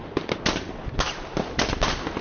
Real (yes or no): yes